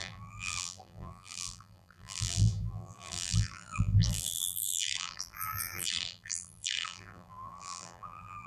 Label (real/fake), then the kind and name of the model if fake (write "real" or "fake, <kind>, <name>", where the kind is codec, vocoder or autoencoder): fake, vocoder, BigVGAN v2